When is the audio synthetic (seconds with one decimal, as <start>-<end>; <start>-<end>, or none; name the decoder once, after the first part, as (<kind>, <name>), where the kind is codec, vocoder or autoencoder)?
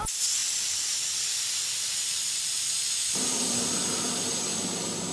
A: 3.0-4.2 (vocoder, BigVGAN v2)